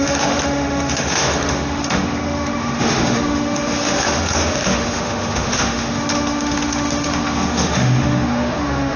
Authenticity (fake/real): fake